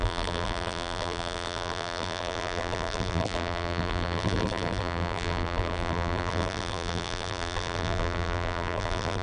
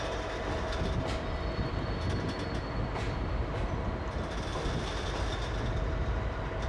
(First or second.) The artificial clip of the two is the first